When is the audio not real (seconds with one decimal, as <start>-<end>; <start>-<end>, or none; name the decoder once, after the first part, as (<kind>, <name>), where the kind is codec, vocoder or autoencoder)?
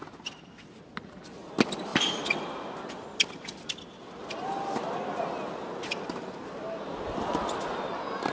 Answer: none